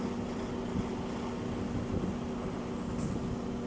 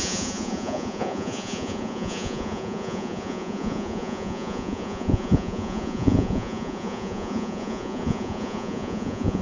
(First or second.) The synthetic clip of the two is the second